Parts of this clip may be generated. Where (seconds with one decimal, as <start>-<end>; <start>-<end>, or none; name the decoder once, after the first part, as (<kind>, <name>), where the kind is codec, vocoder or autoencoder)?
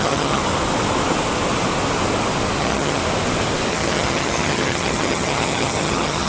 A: 0.0-0.4 (vocoder, HiFi-GAN); 2.6-3.0; 3.7-6.3